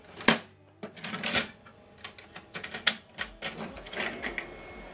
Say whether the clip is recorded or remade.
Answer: recorded